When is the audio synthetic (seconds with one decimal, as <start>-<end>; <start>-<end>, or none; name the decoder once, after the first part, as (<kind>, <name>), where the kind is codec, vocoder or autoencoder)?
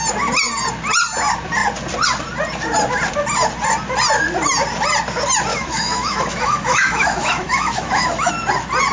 5.5-8.3 (autoencoder, DAC-VAE)